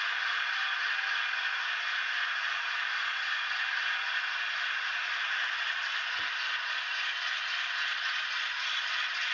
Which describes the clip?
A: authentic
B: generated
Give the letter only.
A